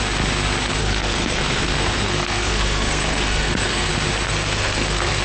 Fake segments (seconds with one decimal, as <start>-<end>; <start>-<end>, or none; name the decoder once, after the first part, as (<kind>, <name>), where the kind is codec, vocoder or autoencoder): 0.8-3.9 (codec, SNAC); 4.3-5.2